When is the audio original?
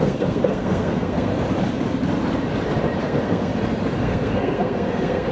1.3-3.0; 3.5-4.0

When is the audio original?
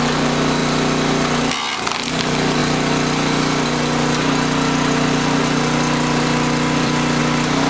0.6-2.1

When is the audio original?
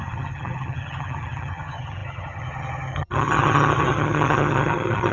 none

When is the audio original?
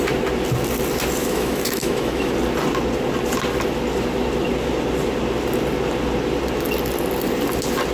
0.0-1.2; 2.3-7.9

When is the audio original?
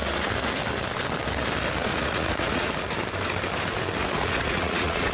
0.0-1.9; 2.7-4.0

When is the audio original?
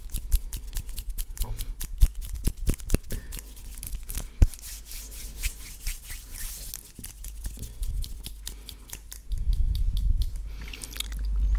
0.0-11.6